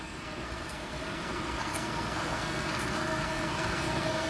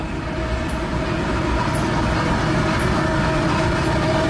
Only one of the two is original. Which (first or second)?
second